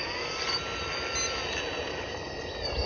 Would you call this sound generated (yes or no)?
no